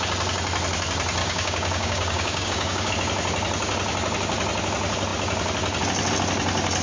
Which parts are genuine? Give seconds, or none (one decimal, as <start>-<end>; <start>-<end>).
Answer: 0.0-1.2; 2.9-6.8